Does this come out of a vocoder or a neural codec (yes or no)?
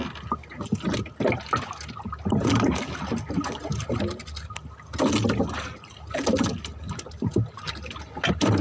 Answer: no